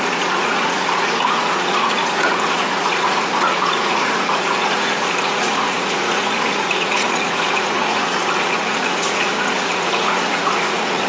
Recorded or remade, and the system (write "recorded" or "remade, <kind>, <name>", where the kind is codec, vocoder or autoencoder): remade, vocoder, Vocos